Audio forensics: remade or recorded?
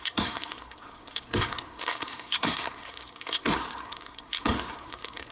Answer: remade